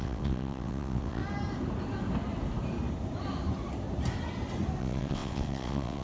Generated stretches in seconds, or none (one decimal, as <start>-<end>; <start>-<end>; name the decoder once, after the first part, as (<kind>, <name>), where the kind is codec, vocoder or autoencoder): 0.0-1.2 (vocoder, WaveNeXt); 4.8-6.0